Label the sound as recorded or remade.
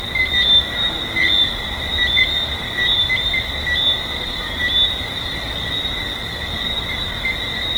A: recorded